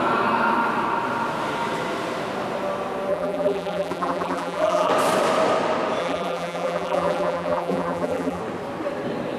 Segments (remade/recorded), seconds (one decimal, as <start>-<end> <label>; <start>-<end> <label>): 0.0-3.1 recorded; 3.1-4.9 remade; 4.9-6.0 recorded; 6.0-8.4 remade; 8.4-9.4 recorded